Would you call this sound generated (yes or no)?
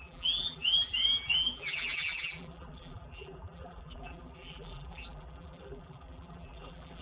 yes